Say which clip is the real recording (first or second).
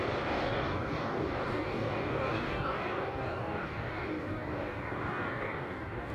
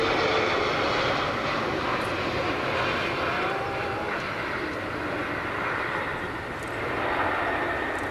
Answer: second